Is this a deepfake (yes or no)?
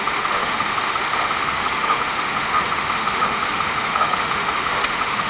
yes